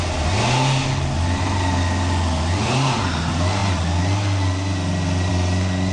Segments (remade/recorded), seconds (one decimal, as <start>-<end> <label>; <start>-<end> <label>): 0.0-5.9 recorded